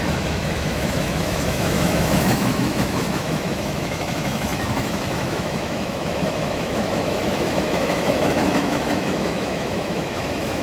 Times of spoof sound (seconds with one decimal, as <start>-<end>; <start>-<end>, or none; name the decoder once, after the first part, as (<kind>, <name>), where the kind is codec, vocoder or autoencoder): 0.0-10.6 (autoencoder, DAC-VAE)